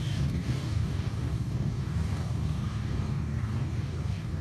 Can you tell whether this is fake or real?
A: fake